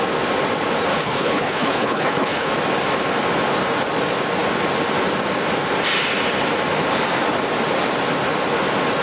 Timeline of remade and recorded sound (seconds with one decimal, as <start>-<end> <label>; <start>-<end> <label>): 0.0-0.9 recorded; 0.9-2.5 remade; 2.5-9.0 recorded